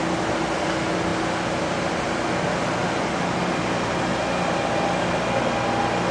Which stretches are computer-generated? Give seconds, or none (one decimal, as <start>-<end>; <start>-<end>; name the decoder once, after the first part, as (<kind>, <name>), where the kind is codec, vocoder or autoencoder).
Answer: none